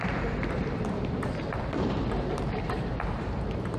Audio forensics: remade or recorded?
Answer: remade